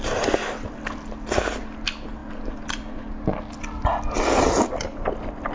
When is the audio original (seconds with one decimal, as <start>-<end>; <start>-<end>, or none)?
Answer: 0.0-5.5